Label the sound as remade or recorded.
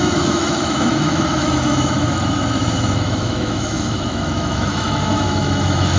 remade